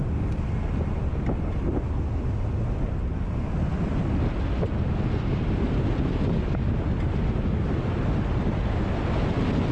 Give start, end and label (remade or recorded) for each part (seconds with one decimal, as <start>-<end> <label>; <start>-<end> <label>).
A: 0.0-9.7 recorded